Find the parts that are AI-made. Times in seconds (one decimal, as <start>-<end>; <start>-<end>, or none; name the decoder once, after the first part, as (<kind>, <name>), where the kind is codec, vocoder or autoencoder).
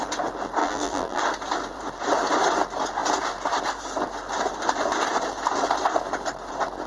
0.6-1.2 (vocoder, BigVGAN v2)